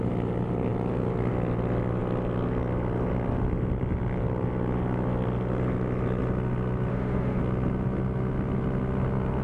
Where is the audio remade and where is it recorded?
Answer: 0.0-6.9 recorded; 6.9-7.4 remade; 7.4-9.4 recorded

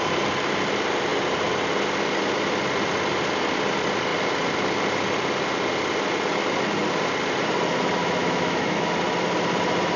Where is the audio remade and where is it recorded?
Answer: 0.0-8.0 recorded; 8.0-8.9 remade; 8.9-10.0 recorded

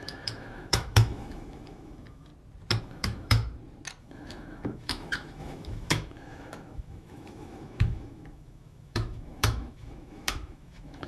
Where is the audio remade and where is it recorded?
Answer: 0.0-2.3 remade; 2.3-2.8 recorded; 2.8-3.4 remade; 3.4-4.0 recorded; 4.0-11.1 remade

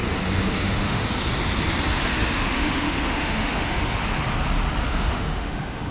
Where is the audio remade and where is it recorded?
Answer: 0.0-0.5 recorded; 0.5-1.0 remade; 1.0-2.0 recorded; 2.0-4.0 remade; 4.0-4.9 recorded; 4.9-5.9 remade

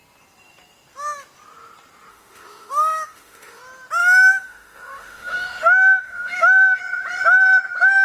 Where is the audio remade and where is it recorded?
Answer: 0.0-2.1 recorded; 2.1-3.6 remade; 3.6-4.0 recorded; 4.0-6.8 remade; 6.8-8.0 recorded